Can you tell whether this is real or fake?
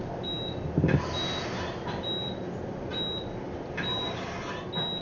real